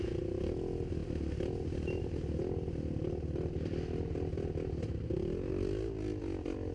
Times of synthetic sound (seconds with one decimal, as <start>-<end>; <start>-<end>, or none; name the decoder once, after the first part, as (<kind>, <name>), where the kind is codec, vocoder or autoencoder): none